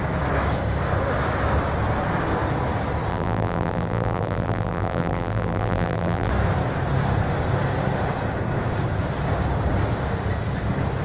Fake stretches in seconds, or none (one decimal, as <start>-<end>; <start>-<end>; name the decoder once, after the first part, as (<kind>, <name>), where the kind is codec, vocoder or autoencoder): 3.1-6.3 (vocoder, BigVGAN v2)